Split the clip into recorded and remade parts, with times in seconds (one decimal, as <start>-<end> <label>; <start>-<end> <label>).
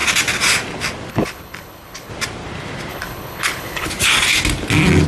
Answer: 0.0-1.1 recorded; 1.1-2.1 remade; 2.1-2.9 recorded; 2.9-3.9 remade; 3.9-5.1 recorded